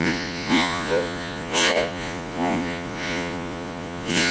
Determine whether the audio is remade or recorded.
remade